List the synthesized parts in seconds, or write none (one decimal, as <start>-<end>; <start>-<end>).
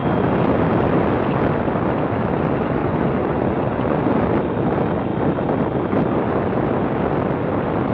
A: 2.8-4.1